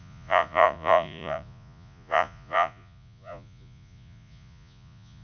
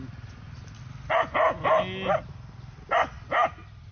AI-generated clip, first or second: first